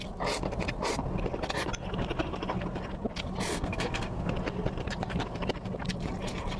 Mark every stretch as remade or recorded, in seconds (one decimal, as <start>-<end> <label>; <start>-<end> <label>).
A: 0.0-3.5 recorded; 3.5-4.3 remade; 4.3-6.6 recorded